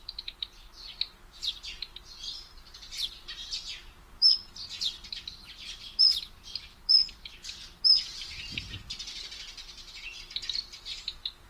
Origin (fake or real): real